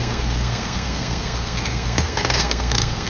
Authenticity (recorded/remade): remade